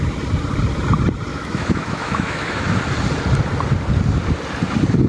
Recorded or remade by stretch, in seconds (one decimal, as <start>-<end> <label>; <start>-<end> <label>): 0.0-1.3 recorded; 1.3-2.7 remade; 2.7-5.1 recorded